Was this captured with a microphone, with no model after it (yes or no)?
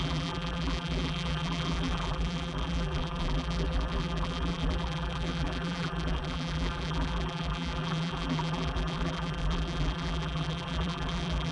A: no